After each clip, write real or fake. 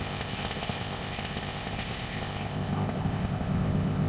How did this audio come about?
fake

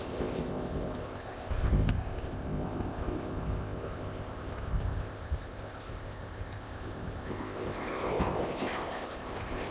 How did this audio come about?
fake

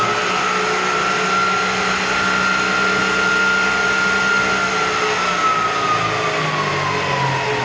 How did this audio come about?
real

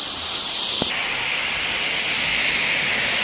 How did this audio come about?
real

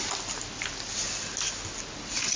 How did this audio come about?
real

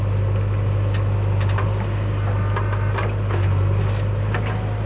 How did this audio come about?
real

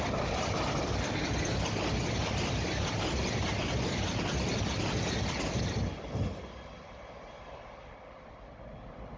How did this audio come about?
real